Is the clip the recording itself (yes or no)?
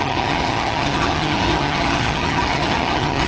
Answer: no